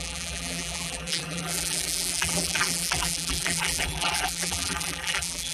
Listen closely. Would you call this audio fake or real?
fake